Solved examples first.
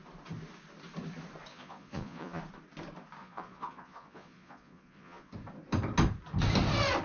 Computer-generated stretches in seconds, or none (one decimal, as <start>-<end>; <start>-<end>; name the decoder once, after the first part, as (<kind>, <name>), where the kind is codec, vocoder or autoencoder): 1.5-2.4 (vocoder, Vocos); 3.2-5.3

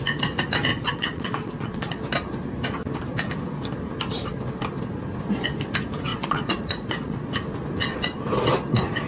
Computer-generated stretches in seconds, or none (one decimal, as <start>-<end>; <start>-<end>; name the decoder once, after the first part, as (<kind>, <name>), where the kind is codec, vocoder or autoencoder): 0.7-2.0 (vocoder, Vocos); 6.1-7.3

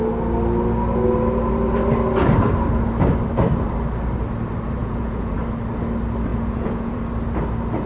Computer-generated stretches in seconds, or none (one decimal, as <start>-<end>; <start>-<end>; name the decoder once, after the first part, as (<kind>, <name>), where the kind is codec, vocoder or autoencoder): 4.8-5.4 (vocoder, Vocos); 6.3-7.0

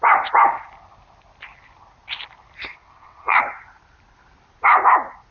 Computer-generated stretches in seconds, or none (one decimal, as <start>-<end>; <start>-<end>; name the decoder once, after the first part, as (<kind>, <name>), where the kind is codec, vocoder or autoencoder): 2.7-3.4 (vocoder, WaveNeXt)

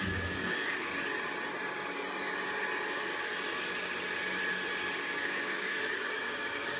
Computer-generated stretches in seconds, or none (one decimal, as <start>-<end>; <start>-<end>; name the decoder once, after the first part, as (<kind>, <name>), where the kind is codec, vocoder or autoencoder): 0.0-0.9 (codec, DAC); 4.9-6.8

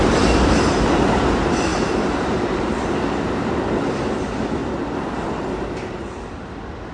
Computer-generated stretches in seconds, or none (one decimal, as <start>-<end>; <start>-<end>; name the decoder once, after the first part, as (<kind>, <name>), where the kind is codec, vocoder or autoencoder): 1.7-3.8 (vocoder, BigVGAN v2)

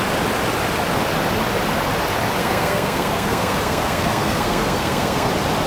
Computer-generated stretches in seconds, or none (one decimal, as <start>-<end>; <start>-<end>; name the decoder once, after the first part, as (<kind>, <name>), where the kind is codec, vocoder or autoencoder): 2.4-5.3 (codec, SNAC)

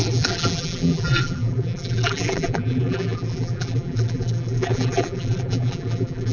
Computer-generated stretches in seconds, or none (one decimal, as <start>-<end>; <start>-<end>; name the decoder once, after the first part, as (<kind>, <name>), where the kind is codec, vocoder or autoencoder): 0.0-6.3 (vocoder, BigVGAN v2)